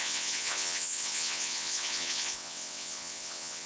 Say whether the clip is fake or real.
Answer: fake